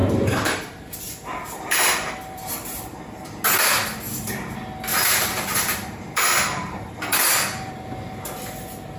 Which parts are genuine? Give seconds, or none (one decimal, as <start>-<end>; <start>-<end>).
2.5-4.9; 7.7-9.0